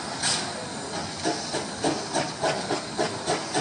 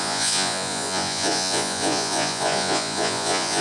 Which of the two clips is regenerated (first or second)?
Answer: second